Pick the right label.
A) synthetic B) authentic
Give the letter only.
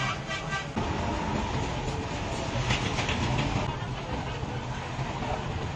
B